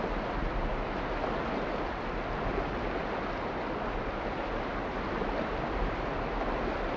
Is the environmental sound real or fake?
real